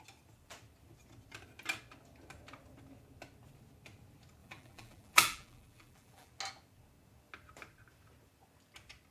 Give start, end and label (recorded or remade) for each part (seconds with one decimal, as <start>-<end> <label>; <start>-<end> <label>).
0.0-4.4 recorded; 4.4-6.3 remade; 6.3-9.1 recorded

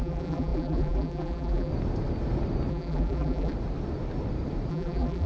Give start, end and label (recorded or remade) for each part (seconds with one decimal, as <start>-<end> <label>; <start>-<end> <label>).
0.0-1.7 remade; 1.7-2.7 recorded; 2.7-3.5 remade; 3.5-4.7 recorded; 4.7-5.3 remade

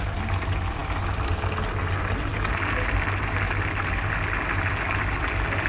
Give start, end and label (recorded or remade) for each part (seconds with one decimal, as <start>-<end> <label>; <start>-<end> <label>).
0.0-5.7 recorded

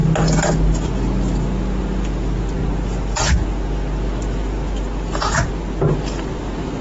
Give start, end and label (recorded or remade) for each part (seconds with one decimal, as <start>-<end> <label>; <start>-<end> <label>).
0.0-6.8 recorded

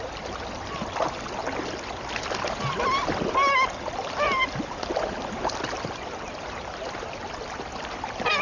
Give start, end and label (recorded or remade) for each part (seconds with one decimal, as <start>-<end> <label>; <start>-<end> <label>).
0.0-8.4 recorded

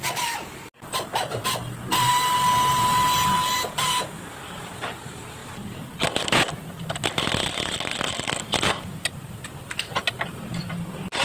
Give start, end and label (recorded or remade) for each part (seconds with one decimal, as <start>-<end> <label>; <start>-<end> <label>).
0.0-11.2 remade